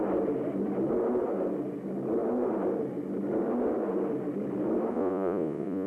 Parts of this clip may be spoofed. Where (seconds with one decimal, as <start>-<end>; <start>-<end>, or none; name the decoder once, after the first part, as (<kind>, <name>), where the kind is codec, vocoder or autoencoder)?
4.9-5.9 (vocoder, Vocos)

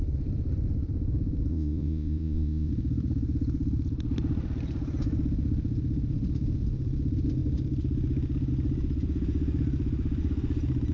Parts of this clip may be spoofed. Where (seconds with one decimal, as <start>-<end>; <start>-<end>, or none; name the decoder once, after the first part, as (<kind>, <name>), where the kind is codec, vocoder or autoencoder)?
1.5-2.7 (vocoder, Vocos)

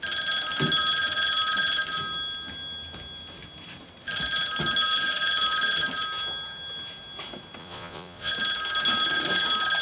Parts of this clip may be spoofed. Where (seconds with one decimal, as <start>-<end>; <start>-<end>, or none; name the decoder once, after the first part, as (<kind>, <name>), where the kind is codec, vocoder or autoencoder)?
7.6-8.3 (vocoder, Vocos)

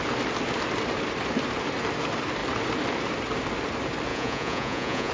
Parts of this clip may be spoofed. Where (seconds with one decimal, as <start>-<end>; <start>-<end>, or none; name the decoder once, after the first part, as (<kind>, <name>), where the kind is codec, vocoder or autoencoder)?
4.1-5.1 (vocoder, Vocos)

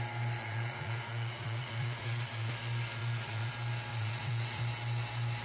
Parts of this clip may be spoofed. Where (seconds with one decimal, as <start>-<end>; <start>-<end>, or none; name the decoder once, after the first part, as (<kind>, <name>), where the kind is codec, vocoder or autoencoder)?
0.4-2.5 (vocoder, Vocos); 3.0-3.5; 3.9-4.6